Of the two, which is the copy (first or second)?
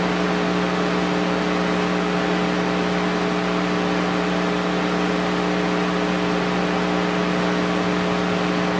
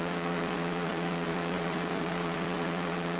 second